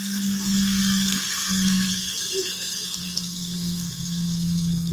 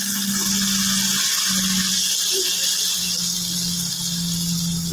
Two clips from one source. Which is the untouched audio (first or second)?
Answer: second